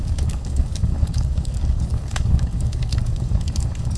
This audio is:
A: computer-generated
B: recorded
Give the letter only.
A